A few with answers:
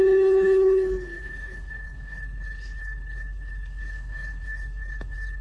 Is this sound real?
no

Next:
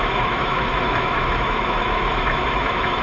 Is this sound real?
no